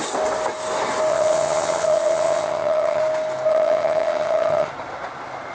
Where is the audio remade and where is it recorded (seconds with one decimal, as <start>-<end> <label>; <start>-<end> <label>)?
0.0-1.1 recorded; 1.1-3.0 remade; 3.0-3.5 recorded; 3.5-4.7 remade; 4.7-5.5 recorded